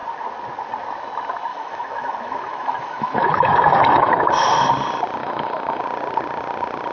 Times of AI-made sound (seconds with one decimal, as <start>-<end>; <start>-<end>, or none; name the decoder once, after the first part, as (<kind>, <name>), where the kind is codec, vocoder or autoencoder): 1.5-4.3 (autoencoder, DAC-VAE); 5.2-5.8